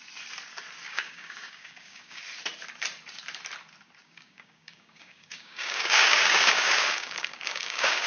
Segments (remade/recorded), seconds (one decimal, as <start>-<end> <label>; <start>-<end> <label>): 0.0-0.9 recorded; 0.9-2.2 remade; 2.2-4.0 recorded; 4.0-8.1 remade